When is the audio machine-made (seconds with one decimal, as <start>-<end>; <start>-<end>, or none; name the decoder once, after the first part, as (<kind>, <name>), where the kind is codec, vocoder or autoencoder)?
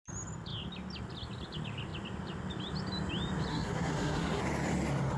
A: 3.5-4.4 (codec, SNAC)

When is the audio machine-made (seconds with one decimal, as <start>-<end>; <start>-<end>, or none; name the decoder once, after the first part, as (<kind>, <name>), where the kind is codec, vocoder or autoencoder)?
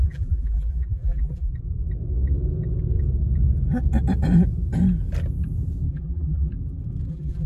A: 0.0-1.5 (vocoder, BigVGAN v2); 5.9-6.5; 7.1-7.5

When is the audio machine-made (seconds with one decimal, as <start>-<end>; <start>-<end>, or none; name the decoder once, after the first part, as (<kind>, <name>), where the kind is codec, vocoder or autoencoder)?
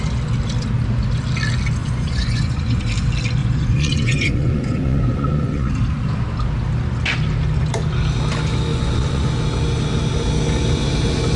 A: 1.8-2.9 (vocoder, Vocos); 3.4-5.7; 8.7-9.3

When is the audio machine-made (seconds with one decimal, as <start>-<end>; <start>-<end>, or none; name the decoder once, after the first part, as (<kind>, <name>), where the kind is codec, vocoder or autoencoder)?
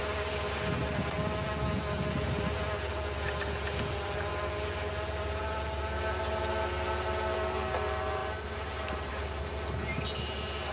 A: none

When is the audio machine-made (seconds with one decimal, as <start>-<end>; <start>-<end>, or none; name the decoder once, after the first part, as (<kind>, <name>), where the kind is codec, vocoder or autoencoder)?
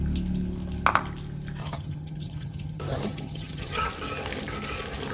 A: 1.6-3.9 (vocoder, HiFi-GAN)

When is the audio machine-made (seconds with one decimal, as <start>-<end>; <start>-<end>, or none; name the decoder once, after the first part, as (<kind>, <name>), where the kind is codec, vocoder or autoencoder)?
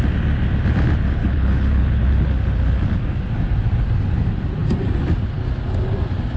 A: 1.2-2.3 (codec, HILCodec)